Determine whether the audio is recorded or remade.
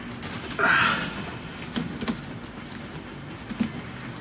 recorded